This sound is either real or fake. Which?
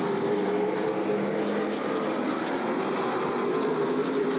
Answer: real